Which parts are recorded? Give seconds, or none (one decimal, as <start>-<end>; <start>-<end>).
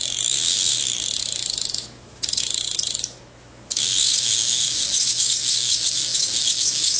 none